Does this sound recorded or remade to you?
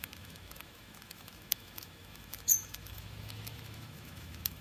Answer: remade